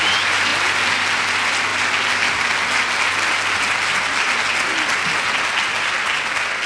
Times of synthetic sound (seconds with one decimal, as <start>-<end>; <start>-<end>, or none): none